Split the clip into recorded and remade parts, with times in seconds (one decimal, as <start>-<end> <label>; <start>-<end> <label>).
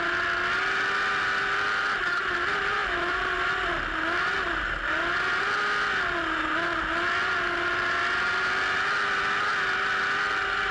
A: 0.0-10.7 recorded